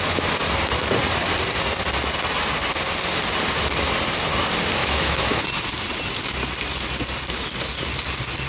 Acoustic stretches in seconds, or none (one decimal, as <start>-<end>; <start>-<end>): 0.0-4.8; 5.4-8.5